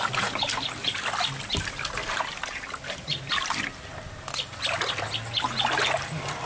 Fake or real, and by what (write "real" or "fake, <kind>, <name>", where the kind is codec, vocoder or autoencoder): real